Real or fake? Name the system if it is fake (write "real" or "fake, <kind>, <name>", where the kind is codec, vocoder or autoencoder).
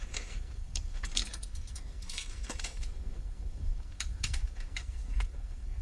fake, codec, SNAC